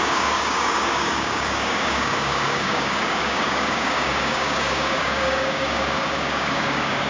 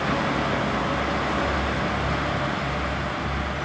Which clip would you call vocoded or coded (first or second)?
first